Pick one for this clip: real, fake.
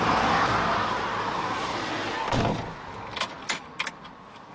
real